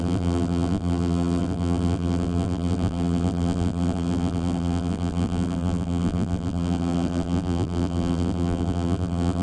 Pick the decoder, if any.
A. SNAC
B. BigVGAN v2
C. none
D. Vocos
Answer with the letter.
B